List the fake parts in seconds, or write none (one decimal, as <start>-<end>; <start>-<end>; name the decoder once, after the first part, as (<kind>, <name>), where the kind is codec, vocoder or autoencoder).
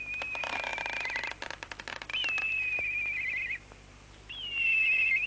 0.0-0.7 (vocoder, BigVGAN v2); 1.2-5.3